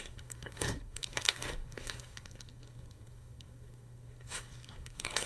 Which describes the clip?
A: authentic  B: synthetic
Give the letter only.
B